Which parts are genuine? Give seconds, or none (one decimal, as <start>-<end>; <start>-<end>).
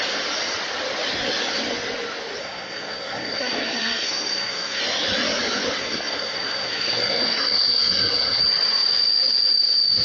0.0-2.4; 4.8-5.8; 8.4-10.0